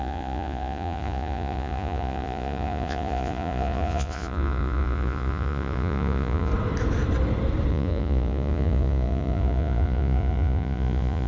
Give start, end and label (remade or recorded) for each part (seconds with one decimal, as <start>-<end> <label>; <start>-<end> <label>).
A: 0.0-6.5 remade; 6.5-7.7 recorded; 7.7-11.3 remade

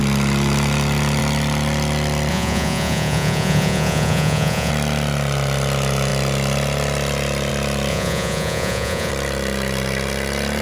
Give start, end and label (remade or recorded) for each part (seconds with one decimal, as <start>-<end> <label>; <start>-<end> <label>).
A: 0.0-2.3 recorded; 2.3-4.7 remade; 4.7-7.9 recorded; 7.9-9.1 remade; 9.1-10.6 recorded

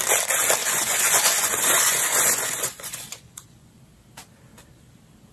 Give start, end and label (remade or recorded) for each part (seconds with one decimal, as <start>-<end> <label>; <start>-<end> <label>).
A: 0.0-0.6 recorded; 0.6-3.8 remade; 3.8-5.3 recorded

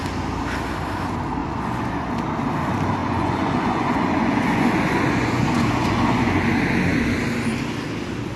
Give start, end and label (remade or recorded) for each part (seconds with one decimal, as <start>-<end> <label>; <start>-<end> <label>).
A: 0.0-1.4 recorded; 1.4-2.1 remade; 2.1-3.0 recorded; 3.0-6.4 remade; 6.4-8.4 recorded

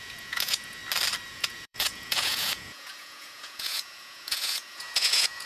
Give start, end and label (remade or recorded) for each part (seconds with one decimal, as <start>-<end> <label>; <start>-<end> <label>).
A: 0.0-0.8 remade; 0.8-1.3 recorded; 1.3-5.5 remade